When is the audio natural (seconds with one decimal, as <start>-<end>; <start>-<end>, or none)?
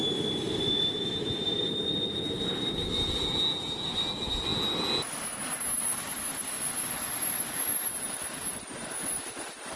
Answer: 4.5-5.8